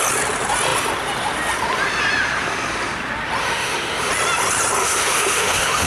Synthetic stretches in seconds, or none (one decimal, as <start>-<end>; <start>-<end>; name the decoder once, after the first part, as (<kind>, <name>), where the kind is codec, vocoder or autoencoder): 3.4-4.1 (autoencoder, DAC-VAE); 4.8-5.9